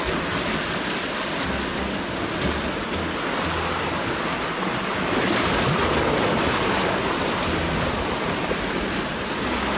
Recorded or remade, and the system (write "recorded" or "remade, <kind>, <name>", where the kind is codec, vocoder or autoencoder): recorded